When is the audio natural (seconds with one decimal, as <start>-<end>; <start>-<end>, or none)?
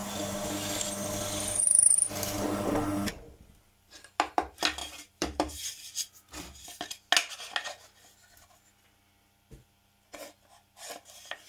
0.0-4.8; 5.6-11.5